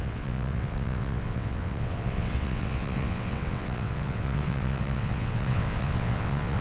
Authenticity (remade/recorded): remade